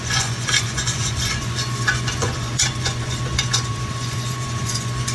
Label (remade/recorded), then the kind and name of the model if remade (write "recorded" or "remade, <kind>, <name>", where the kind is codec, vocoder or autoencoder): remade, vocoder, Vocos